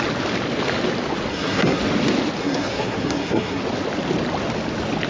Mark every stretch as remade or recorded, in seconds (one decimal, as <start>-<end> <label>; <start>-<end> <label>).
0.0-1.3 recorded; 1.3-1.8 remade; 1.8-2.4 recorded; 2.4-3.6 remade; 3.6-5.1 recorded